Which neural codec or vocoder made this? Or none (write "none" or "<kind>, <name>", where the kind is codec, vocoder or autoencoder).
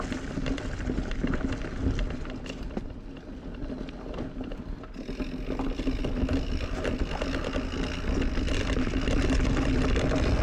none